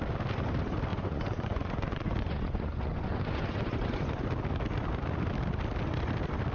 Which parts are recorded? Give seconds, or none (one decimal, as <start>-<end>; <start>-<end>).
0.0-0.9; 4.2-6.5